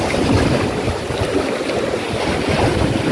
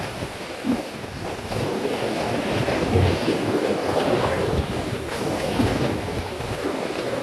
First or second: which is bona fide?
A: first